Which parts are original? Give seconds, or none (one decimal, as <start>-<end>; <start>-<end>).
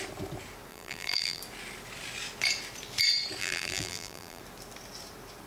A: 0.0-0.7; 1.4-3.4; 4.4-5.5